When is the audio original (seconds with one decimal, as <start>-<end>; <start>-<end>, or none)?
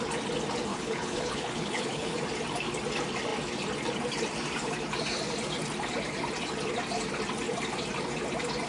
0.0-0.7; 2.2-8.7